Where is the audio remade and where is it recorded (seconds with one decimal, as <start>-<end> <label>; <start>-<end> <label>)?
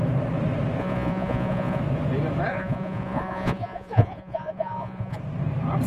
0.0-0.8 recorded; 0.8-1.8 remade; 1.8-2.5 recorded; 2.5-5.2 remade; 5.2-5.9 recorded